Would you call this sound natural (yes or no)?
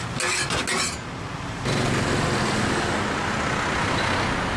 yes